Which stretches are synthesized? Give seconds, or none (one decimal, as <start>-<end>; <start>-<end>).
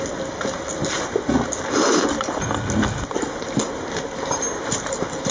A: none